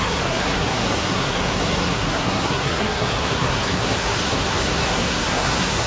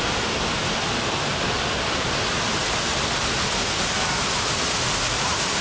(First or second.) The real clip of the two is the second